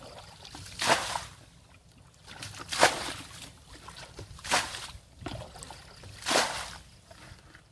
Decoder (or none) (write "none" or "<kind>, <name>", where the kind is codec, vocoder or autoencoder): none